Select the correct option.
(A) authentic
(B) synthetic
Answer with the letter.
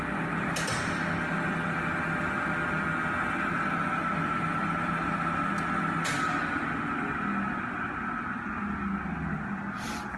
A